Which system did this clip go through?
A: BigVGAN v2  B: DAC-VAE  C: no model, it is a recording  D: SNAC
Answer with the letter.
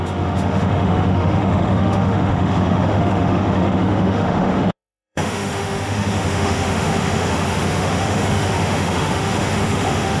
B